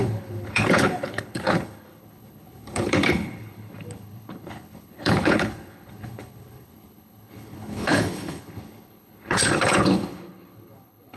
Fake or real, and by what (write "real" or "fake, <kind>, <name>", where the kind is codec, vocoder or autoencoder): fake, codec, HILCodec